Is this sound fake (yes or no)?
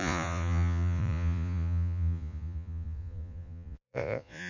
yes